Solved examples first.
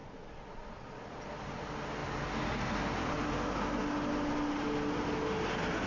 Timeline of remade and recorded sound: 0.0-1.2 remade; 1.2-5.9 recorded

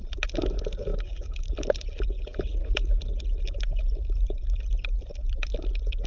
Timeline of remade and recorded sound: 0.0-0.9 recorded; 0.9-1.5 remade; 1.5-6.1 recorded

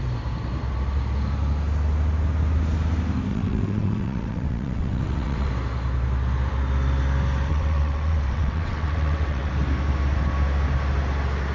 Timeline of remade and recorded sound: 0.0-3.3 recorded; 3.3-5.5 remade; 5.5-7.5 recorded; 7.5-9.5 remade; 9.5-11.5 recorded

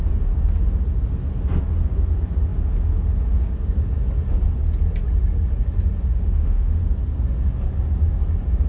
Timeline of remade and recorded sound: 0.0-6.1 recorded; 6.1-6.8 remade; 6.8-8.7 recorded

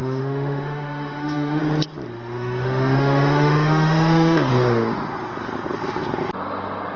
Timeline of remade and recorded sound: 0.0-1.6 remade; 1.6-2.1 recorded; 2.1-4.5 remade; 4.5-7.0 recorded

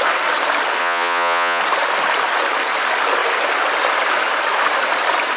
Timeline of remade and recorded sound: 0.0-0.8 recorded; 0.8-1.6 remade; 1.6-5.4 recorded

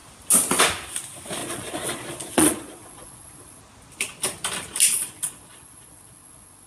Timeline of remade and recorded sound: 0.0-1.4 recorded; 1.4-3.6 remade; 3.6-4.9 recorded; 4.9-6.7 remade

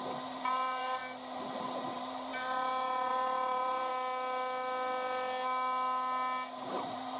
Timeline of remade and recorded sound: 0.0-1.0 remade; 1.0-1.6 recorded; 1.6-3.9 remade; 3.9-6.7 recorded; 6.7-7.2 remade